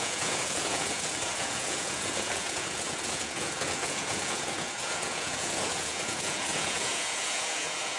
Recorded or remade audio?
remade